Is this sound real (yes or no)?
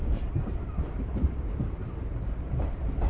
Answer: no